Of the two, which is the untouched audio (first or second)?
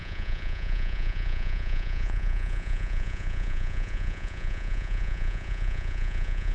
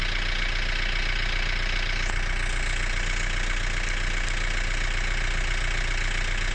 second